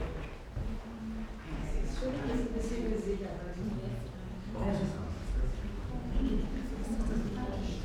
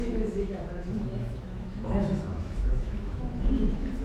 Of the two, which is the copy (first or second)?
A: second